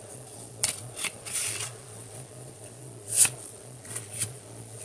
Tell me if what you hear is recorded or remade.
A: remade